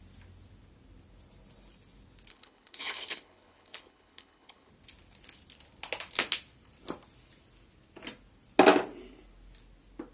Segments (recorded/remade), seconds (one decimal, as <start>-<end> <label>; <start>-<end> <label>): 0.0-2.3 recorded; 2.3-4.7 remade; 4.7-10.1 recorded